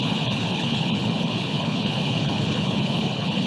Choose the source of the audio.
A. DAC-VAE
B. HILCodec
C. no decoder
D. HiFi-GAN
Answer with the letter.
B